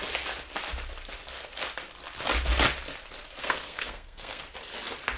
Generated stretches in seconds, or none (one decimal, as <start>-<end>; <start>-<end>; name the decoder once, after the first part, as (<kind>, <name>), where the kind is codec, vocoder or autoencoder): 3.4-4.4 (codec, SNAC)